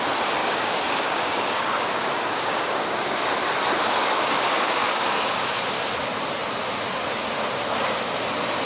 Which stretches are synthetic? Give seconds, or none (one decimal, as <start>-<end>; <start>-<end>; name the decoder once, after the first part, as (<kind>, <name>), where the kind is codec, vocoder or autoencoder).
0.4-3.2 (codec, DAC); 3.8-5.6